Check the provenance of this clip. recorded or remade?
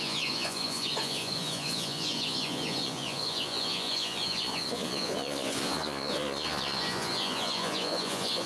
remade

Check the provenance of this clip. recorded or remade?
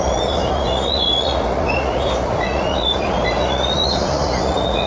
remade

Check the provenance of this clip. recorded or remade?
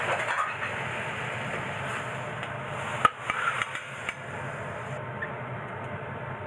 recorded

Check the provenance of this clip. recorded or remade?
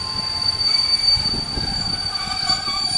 recorded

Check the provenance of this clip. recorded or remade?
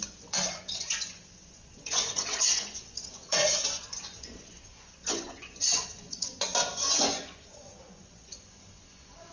remade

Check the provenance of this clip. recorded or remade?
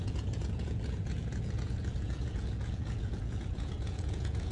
remade